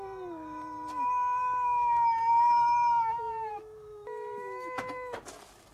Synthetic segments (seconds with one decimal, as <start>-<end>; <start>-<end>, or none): 1.4-4.8